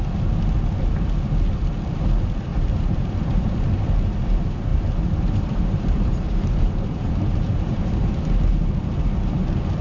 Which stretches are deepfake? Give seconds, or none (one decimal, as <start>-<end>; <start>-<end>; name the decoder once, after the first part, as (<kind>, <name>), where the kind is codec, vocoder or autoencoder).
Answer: 2.5-3.5 (vocoder, BigVGAN v2); 4.7-8.2